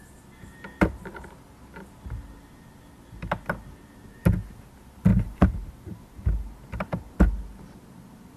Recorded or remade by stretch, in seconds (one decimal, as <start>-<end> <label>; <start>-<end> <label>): 0.0-5.1 recorded; 5.1-7.2 remade; 7.2-8.4 recorded